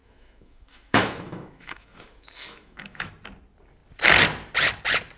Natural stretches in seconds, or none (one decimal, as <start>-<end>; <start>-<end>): 3.1-5.2